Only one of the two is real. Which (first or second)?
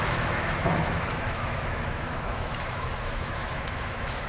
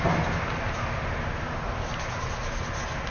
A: second